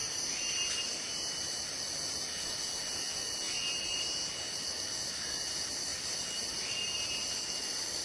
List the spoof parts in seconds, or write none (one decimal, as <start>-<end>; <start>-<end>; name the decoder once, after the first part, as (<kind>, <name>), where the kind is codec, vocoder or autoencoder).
5.9-8.0 (vocoder, BigVGAN v2)